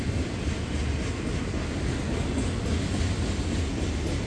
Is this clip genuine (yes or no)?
yes